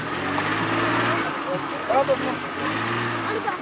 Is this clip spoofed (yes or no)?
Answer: no